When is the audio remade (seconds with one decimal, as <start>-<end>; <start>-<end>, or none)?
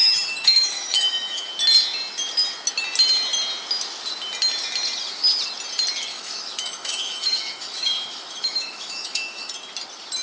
0.0-1.5; 6.1-9.5